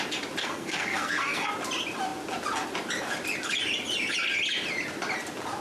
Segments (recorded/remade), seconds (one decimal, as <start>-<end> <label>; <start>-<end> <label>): 0.0-0.4 recorded; 0.4-1.5 remade; 1.5-5.6 recorded

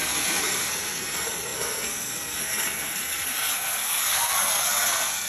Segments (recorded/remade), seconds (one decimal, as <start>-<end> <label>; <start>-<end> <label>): 0.0-5.3 remade

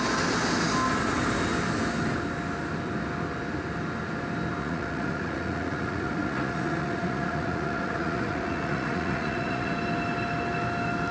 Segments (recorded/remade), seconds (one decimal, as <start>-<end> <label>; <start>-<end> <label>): 0.0-4.6 recorded; 4.6-9.7 remade; 9.7-11.1 recorded

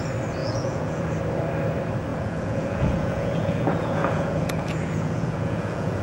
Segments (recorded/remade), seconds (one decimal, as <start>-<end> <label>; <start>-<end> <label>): 0.0-0.4 recorded; 0.4-1.1 remade; 1.1-2.1 recorded; 2.1-6.0 remade

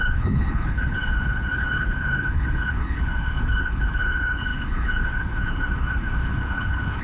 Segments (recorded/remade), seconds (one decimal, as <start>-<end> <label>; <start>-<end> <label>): 0.0-7.0 remade

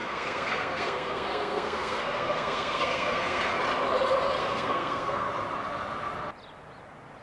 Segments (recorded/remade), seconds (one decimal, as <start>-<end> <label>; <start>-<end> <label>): 0.0-3.5 remade; 3.5-4.4 recorded; 4.4-5.3 remade; 5.3-7.2 recorded

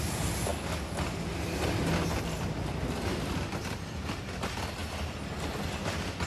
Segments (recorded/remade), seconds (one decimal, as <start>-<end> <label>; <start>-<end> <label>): 0.0-6.3 recorded